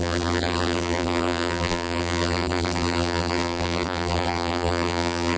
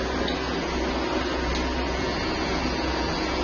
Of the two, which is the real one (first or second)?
second